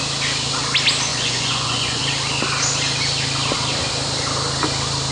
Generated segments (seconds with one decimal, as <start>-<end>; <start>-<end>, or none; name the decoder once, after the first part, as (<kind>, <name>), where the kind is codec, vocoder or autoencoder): 1.1-2.0 (vocoder, Vocos)